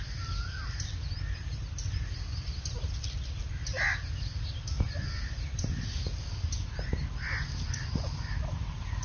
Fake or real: real